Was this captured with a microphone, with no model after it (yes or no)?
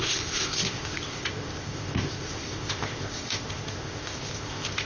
no